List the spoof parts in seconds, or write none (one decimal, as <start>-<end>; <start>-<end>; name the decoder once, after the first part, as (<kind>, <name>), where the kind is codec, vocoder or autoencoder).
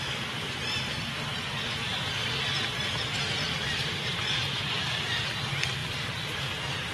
0.0-1.9 (vocoder, BigVGAN v2); 2.4-6.9